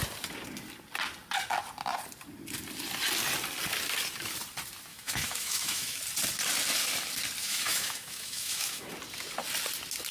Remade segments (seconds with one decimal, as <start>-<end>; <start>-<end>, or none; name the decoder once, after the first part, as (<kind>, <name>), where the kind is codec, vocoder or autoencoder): 4.9-6.0 (autoencoder, DAC-VAE); 7.4-8.9